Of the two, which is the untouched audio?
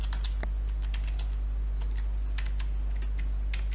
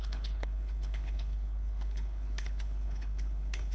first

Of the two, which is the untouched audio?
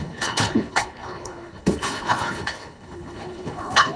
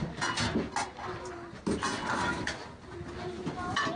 second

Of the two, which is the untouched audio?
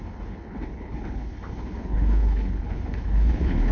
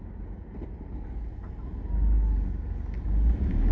second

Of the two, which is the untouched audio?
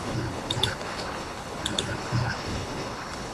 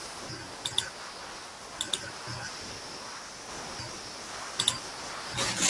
second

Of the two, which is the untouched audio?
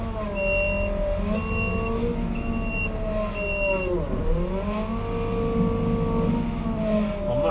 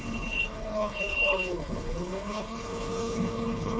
first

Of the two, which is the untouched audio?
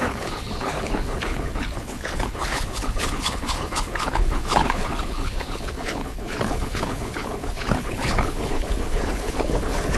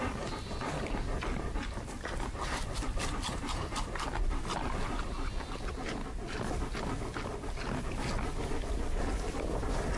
second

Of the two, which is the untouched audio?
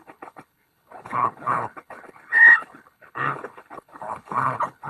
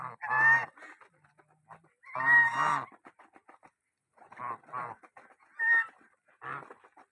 second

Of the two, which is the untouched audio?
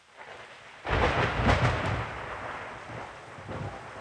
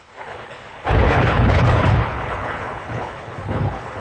first